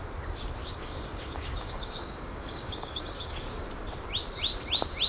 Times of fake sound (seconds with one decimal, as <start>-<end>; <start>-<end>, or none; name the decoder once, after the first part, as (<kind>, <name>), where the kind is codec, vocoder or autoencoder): 0.6-3.7 (codec, DAC)